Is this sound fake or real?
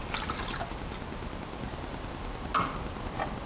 real